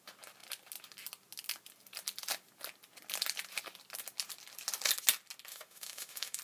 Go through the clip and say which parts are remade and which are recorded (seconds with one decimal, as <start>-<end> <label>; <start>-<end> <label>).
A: 0.0-5.5 recorded; 5.5-6.4 remade

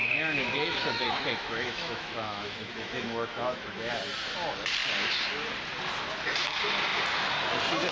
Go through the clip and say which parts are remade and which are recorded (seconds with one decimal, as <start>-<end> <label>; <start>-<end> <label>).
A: 0.0-3.9 remade; 3.9-7.9 recorded

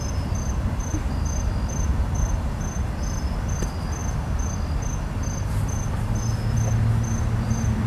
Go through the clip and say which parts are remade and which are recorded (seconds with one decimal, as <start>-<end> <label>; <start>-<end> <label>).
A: 0.0-7.9 recorded

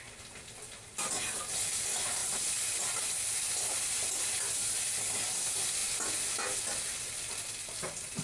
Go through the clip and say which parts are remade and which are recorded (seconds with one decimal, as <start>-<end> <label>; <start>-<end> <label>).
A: 0.0-8.2 recorded

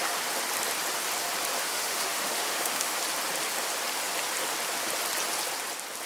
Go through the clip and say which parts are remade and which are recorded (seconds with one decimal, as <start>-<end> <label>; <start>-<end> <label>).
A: 0.0-1.6 recorded; 1.6-3.0 remade; 3.0-6.1 recorded

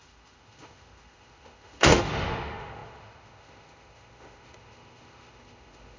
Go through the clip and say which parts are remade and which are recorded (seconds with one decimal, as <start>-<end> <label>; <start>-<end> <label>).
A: 0.0-6.0 remade

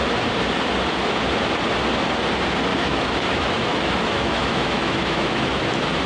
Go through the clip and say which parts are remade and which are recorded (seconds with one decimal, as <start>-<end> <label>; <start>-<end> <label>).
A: 0.0-2.7 recorded; 2.7-5.6 remade; 5.6-6.1 recorded